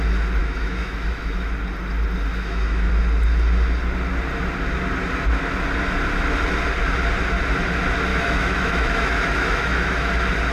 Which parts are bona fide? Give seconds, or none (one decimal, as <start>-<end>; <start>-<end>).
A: 0.0-0.4; 1.5-2.3; 2.9-8.1; 10.1-10.5